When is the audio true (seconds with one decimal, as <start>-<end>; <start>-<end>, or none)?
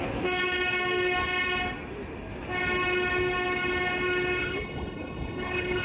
0.0-4.4